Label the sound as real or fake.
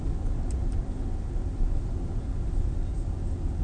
real